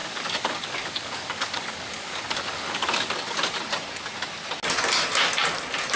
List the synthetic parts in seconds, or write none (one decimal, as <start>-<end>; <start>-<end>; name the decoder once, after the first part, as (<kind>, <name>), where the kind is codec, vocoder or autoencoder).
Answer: 0.0-3.6 (codec, DAC)